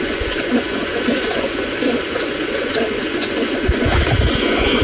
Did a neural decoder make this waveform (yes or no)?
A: yes